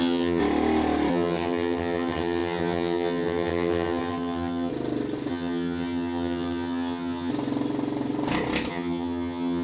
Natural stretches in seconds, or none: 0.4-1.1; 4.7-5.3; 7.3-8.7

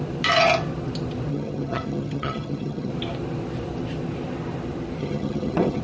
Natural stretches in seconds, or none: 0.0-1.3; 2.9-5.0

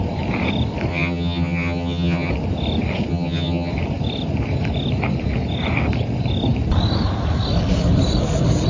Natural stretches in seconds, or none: 0.0-0.9; 2.3-3.1; 3.7-8.7

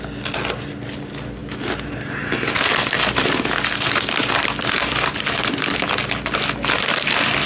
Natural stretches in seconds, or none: 0.0-7.5

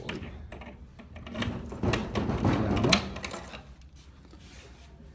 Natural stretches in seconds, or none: 0.0-5.1